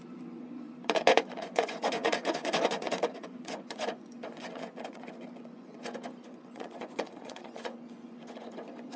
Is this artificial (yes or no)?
yes